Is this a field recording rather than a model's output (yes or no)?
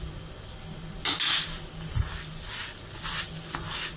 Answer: yes